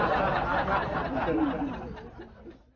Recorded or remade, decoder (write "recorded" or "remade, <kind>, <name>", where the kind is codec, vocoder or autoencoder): recorded